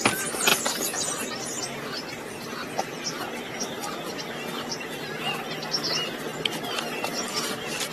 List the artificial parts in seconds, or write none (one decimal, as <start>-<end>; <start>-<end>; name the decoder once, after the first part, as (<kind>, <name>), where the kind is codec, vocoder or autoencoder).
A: none